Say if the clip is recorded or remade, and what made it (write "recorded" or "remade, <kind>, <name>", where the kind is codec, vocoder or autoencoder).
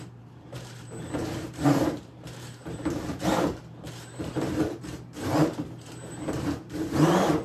remade, vocoder, BigVGAN v2